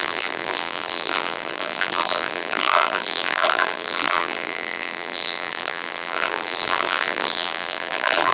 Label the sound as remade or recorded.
remade